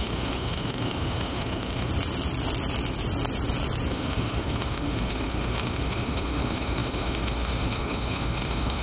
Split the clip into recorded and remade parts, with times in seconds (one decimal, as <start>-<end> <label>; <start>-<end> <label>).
0.0-1.9 remade; 1.9-3.9 recorded; 3.9-8.8 remade